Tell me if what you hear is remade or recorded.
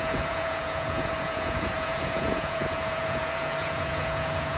remade